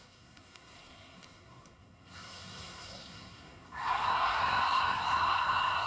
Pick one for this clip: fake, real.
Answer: fake